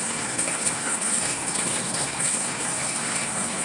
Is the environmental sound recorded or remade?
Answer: remade